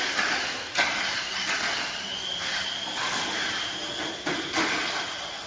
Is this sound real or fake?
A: real